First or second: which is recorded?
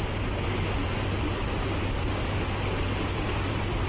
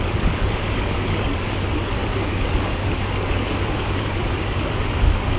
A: first